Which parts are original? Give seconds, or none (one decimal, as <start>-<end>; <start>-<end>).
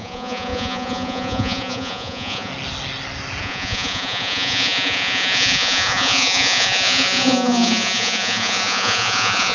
2.5-3.4